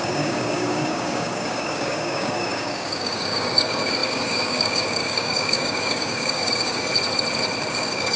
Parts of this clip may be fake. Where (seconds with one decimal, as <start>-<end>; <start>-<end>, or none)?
0.0-6.9; 7.7-8.2